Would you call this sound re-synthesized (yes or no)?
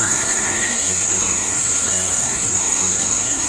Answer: yes